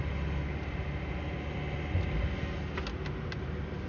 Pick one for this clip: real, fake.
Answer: real